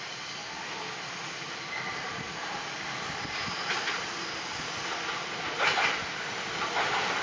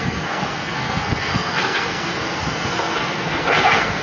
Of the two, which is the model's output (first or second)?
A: second